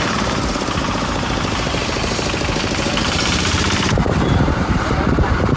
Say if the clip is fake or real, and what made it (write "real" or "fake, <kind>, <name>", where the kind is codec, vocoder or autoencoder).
fake, vocoder, BigVGAN v2